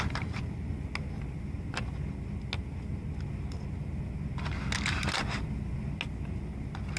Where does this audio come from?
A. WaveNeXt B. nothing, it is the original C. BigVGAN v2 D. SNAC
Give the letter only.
B